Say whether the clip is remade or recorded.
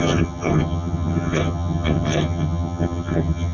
remade